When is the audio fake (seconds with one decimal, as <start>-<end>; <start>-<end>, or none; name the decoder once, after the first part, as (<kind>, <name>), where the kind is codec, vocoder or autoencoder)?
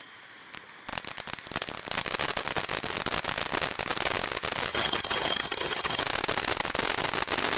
4.7-6.0 (vocoder, HiFi-GAN)